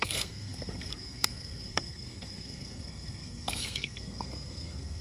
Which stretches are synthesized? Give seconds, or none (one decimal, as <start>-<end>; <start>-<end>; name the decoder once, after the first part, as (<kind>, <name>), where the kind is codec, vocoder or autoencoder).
0.0-5.0 (codec, SNAC)